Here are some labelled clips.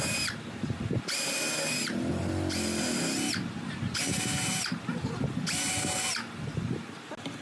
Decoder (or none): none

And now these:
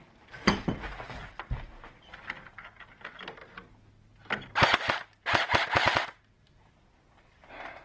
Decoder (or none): none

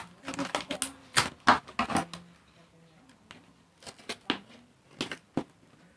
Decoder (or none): none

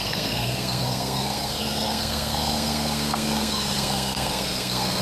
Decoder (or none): codec, SNAC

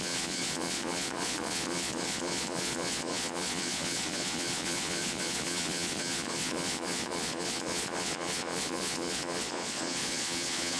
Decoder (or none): vocoder, Vocos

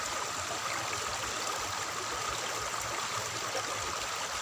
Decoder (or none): none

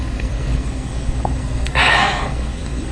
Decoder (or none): codec, SNAC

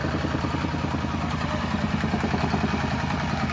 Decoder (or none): none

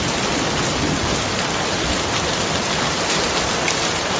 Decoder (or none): none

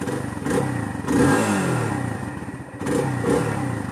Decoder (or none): none